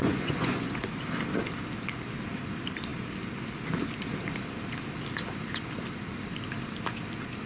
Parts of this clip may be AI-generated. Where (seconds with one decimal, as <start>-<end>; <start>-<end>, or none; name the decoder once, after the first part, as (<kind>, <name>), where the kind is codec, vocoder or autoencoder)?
0.0-0.8 (vocoder, Vocos)